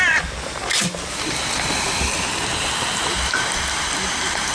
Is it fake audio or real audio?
fake